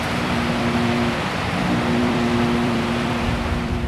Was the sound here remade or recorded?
remade